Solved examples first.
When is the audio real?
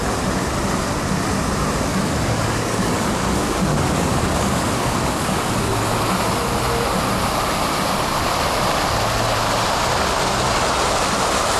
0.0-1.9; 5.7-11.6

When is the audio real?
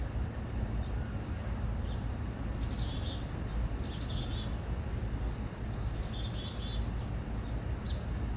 0.0-8.4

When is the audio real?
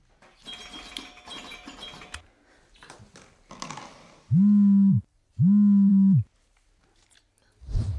0.0-8.0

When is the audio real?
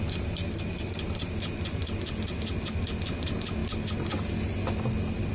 0.0-5.3